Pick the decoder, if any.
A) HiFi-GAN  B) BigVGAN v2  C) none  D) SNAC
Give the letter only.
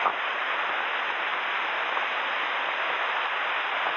C